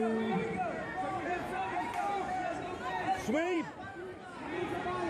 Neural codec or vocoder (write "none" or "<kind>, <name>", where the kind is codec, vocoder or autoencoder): vocoder, BigVGAN v2